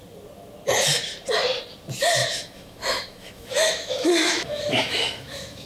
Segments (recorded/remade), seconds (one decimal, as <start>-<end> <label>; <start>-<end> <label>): 0.0-2.2 recorded; 2.2-5.7 remade